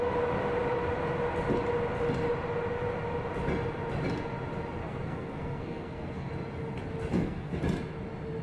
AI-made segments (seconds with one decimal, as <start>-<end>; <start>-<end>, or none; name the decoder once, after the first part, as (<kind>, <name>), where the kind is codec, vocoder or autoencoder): 4.8-6.3 (codec, SNAC); 7.1-7.6

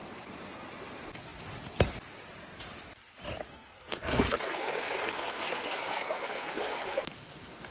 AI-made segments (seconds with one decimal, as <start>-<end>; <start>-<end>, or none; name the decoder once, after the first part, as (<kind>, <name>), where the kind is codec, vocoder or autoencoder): 3.5-7.7 (codec, SNAC)